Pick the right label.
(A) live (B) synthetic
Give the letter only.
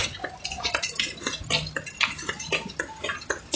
A